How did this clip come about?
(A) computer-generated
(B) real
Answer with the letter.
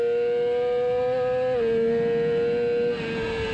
B